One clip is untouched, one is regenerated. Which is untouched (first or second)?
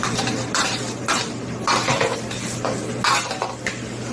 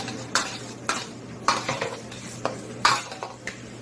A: first